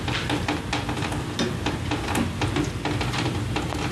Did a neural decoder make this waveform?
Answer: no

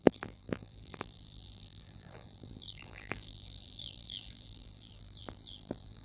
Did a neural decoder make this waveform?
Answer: yes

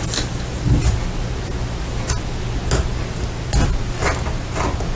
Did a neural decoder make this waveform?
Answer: no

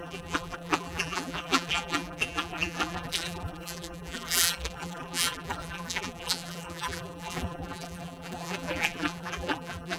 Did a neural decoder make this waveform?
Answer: yes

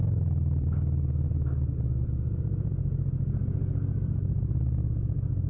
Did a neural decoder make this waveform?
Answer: no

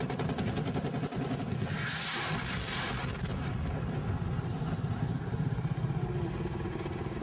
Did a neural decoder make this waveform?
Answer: no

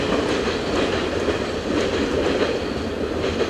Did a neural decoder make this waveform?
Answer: no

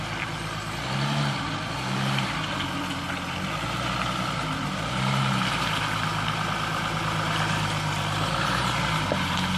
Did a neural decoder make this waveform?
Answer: no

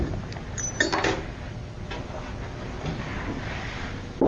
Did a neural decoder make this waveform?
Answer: no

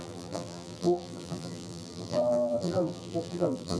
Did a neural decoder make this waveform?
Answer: yes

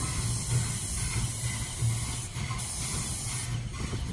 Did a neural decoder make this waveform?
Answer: no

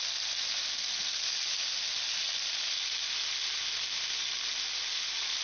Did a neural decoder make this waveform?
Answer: no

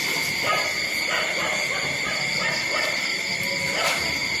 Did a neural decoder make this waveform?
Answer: yes